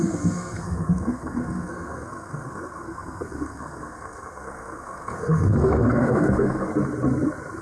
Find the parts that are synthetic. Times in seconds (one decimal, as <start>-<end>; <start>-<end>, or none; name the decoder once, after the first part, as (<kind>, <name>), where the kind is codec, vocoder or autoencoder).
0.0-6.7 (codec, SNAC)